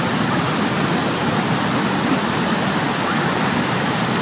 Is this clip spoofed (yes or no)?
no